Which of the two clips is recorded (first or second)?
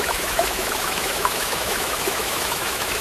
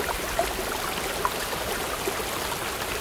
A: second